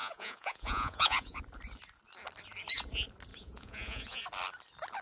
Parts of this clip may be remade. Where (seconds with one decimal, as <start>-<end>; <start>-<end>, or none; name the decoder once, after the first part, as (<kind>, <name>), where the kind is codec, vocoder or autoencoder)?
0.0-1.4 (vocoder, Vocos); 3.3-4.2